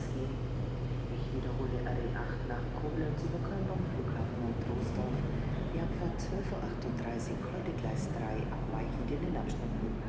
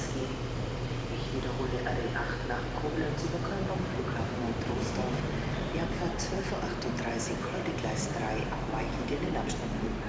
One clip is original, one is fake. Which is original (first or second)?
first